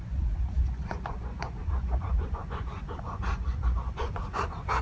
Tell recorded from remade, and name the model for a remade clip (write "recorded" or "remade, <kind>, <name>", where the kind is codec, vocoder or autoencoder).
remade, vocoder, Vocos